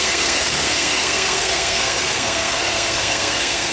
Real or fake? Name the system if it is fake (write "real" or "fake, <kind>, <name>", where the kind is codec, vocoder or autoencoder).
fake, codec, SNAC